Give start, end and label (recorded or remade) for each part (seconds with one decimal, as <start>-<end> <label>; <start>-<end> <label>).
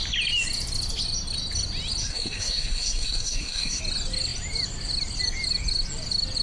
0.0-2.0 recorded; 2.0-3.8 remade; 3.8-6.4 recorded